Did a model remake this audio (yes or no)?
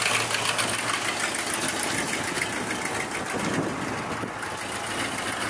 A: no